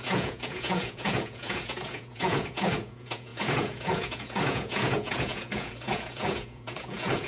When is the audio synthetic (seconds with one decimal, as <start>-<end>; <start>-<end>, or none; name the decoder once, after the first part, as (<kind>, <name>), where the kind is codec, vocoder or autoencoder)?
0.0-7.3 (vocoder, Vocos)